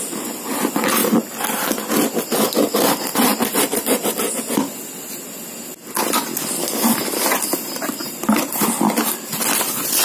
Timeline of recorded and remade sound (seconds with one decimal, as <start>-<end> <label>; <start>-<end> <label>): 0.0-10.0 recorded